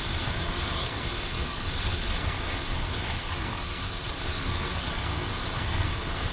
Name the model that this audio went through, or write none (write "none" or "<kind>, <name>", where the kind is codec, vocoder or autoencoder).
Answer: codec, SNAC